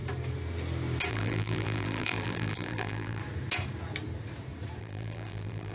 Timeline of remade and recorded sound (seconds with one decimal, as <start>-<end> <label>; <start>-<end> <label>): 0.0-1.1 recorded; 1.1-3.2 remade; 3.2-4.8 recorded; 4.8-5.7 remade